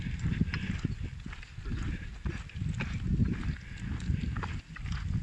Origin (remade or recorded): recorded